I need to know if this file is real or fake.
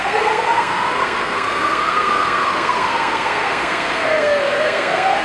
fake